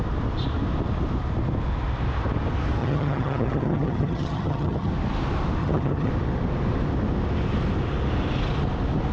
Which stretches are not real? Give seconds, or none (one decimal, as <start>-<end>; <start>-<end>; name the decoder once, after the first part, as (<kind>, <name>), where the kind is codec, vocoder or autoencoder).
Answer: 2.8-4.9 (vocoder, HiFi-GAN); 5.6-6.1